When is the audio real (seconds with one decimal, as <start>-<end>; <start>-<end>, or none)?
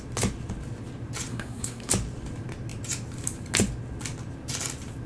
0.0-1.3; 1.9-5.1